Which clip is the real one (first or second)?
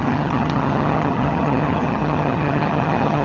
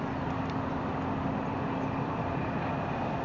second